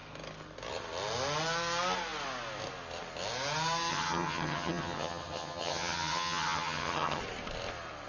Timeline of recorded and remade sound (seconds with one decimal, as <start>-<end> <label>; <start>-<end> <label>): 0.0-3.9 recorded; 3.9-7.2 remade; 7.2-8.1 recorded